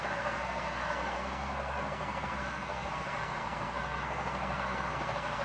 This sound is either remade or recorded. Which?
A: remade